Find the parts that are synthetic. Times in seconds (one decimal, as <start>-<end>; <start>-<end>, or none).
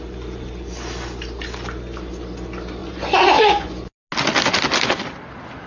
2.8-3.7